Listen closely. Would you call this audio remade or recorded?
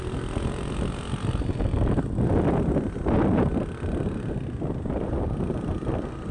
remade